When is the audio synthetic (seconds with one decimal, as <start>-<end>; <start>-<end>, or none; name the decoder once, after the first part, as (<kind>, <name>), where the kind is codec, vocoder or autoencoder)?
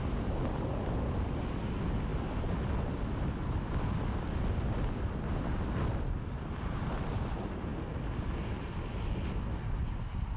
none